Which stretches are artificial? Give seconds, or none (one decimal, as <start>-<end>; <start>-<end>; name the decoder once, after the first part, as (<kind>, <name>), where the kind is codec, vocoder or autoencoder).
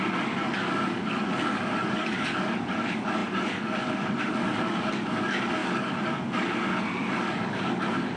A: 0.0-8.2 (codec, DAC)